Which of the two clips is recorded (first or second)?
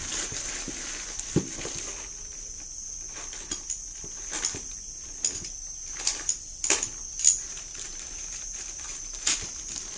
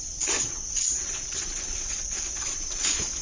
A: first